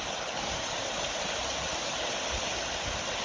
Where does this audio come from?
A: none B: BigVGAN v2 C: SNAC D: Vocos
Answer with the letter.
A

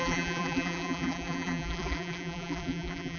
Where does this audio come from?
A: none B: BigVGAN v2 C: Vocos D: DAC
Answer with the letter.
B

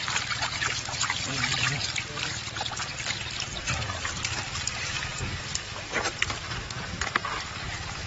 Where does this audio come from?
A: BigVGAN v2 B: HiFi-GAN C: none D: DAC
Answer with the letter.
A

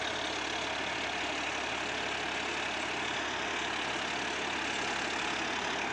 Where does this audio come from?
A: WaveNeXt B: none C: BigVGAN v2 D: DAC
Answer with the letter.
B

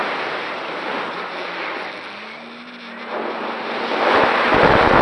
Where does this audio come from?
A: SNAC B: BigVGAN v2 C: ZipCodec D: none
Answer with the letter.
D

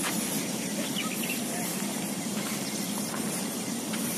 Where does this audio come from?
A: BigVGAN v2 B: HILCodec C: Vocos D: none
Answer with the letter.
D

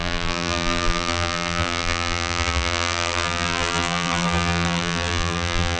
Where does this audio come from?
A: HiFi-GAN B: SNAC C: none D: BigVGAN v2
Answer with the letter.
D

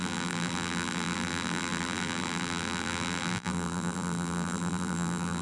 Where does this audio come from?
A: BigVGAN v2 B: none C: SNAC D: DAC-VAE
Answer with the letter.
A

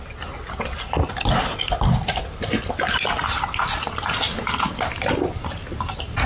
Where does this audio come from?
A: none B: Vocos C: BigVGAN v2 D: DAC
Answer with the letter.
A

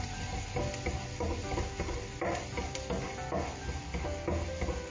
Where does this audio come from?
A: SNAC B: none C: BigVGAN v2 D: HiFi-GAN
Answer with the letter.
B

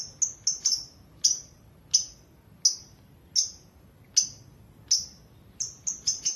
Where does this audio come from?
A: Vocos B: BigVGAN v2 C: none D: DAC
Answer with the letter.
C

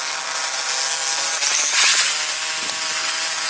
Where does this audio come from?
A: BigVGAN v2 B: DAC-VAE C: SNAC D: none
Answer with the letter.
D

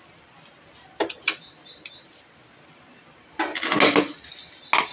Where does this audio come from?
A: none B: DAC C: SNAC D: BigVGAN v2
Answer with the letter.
A